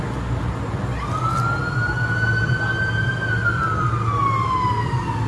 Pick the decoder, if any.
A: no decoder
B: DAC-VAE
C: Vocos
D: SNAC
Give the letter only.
A